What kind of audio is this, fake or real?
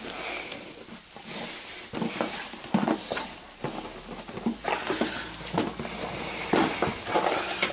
real